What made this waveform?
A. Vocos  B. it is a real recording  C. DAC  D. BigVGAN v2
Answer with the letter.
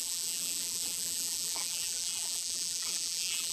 D